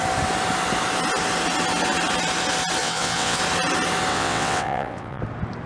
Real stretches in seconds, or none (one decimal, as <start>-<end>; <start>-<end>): 0.0-2.8; 3.4-4.1; 5.2-5.7